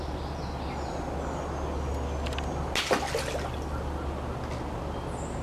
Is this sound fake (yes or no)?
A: no